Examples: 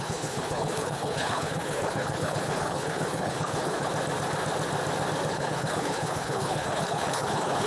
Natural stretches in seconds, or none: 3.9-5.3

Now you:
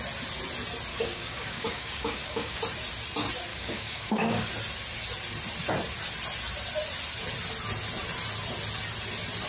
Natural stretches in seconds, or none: 0.0-0.9; 2.6-3.5; 4.5-9.5

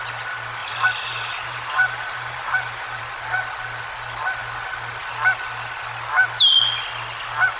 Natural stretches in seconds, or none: 0.0-0.6; 3.0-7.6

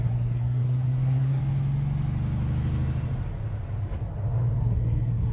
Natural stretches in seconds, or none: 1.4-4.6

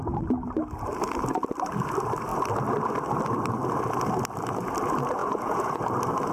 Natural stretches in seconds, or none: 0.0-5.2; 5.8-6.3

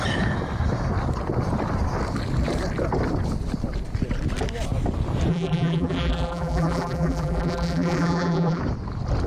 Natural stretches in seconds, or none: 0.0-5.3; 8.6-9.3